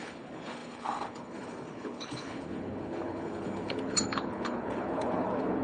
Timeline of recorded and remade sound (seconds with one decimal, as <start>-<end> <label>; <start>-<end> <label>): 0.0-5.6 remade